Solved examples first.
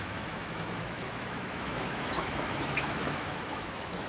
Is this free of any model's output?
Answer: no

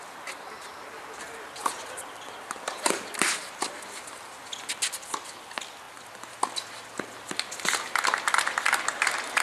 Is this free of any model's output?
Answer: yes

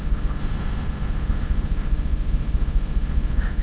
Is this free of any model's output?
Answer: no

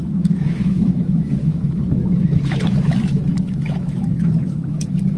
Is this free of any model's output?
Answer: no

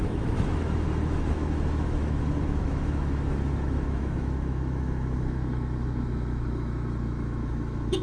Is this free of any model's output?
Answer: no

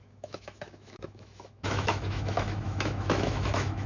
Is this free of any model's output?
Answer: no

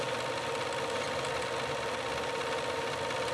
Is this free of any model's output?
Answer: yes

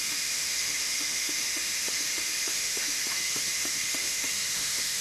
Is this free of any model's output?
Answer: no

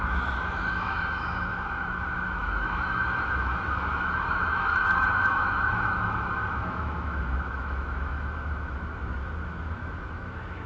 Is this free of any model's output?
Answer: no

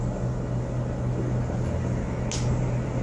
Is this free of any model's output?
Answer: yes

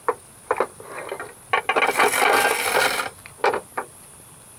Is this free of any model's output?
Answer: yes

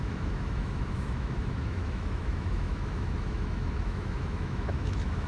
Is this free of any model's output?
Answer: no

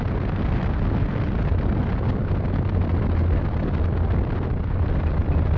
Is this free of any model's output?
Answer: yes